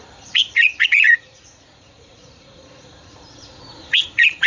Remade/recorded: remade